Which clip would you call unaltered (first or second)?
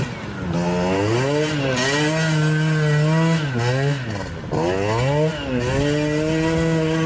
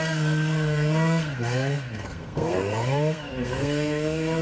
first